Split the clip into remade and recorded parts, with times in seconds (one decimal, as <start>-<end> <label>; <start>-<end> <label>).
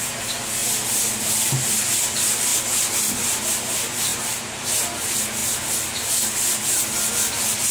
0.0-4.1 recorded; 4.1-4.6 remade; 4.6-7.7 recorded